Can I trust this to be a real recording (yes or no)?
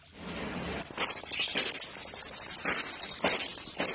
yes